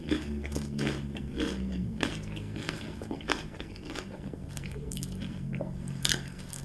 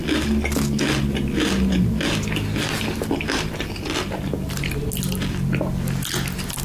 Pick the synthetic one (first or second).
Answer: first